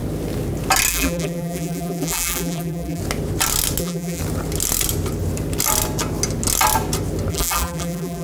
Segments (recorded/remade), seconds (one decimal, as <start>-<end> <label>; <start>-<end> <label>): 0.0-0.9 recorded; 0.9-3.0 remade; 3.0-3.8 recorded; 3.8-4.2 remade; 4.2-7.3 recorded; 7.3-8.2 remade